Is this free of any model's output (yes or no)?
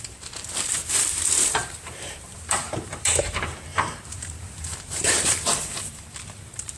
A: no